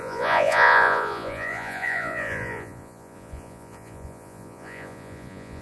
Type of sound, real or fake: fake